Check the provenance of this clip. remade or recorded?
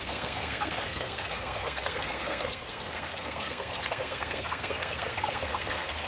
remade